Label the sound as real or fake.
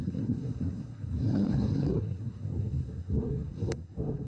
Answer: fake